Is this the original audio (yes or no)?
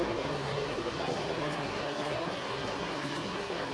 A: no